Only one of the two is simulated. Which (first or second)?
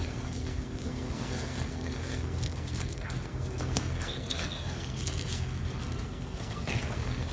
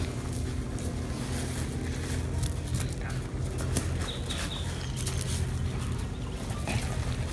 first